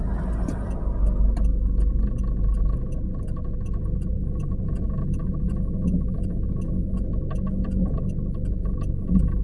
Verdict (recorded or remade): recorded